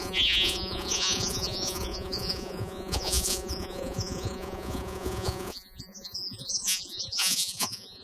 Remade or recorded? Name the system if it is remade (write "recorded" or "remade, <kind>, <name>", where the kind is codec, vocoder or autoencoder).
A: remade, vocoder, Vocos